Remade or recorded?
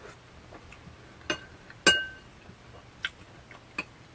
recorded